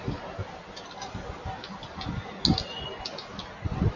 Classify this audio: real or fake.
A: real